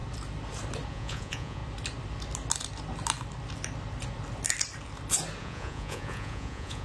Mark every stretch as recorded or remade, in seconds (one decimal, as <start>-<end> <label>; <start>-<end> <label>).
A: 0.0-0.9 recorded; 0.9-1.6 remade; 1.6-5.4 recorded; 5.4-6.8 remade